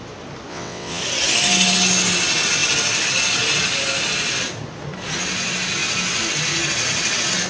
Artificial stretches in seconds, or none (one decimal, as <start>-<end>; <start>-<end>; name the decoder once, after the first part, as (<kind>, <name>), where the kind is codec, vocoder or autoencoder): 0.5-1.0 (vocoder, WaveNeXt)